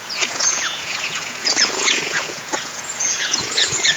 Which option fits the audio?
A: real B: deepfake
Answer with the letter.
B